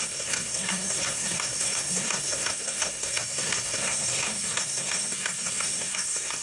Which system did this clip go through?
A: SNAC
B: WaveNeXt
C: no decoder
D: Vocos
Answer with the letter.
A